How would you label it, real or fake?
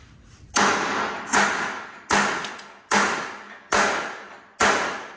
real